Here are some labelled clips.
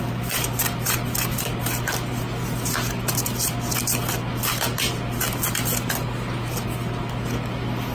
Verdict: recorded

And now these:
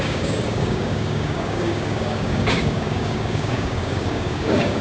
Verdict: remade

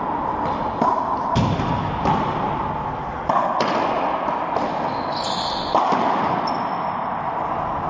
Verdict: recorded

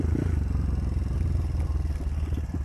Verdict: recorded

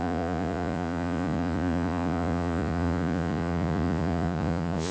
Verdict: remade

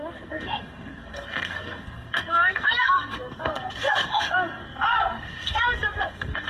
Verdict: remade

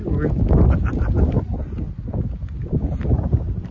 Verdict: recorded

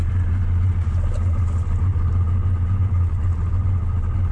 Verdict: recorded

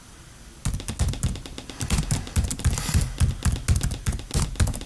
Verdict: recorded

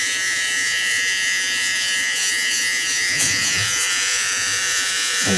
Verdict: remade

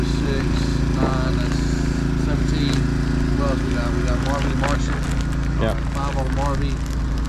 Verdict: recorded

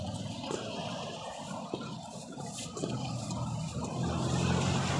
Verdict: recorded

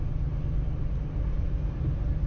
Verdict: recorded